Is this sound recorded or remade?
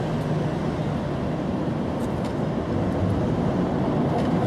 recorded